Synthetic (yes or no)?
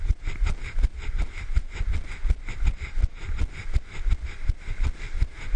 no